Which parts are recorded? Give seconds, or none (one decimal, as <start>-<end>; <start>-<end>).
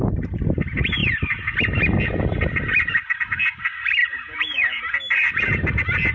0.0-4.0; 4.8-6.1